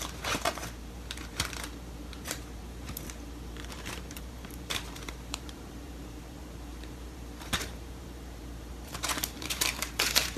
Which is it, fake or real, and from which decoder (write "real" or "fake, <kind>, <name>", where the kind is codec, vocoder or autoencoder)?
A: fake, vocoder, BigVGAN v2